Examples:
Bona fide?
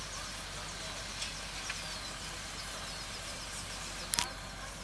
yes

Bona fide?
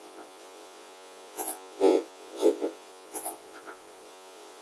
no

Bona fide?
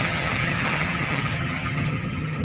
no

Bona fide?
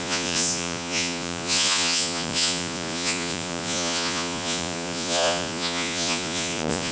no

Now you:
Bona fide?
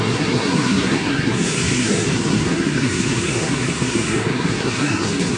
no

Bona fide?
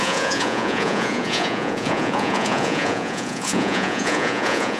no